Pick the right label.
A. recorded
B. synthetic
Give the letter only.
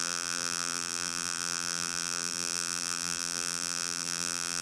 B